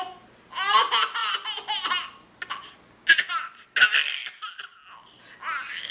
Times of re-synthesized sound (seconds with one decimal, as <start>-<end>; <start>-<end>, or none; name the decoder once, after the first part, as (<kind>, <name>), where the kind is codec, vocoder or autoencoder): none